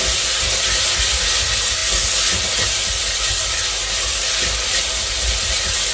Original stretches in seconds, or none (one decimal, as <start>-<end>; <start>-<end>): 0.0-5.9